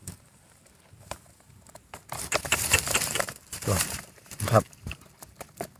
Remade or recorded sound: remade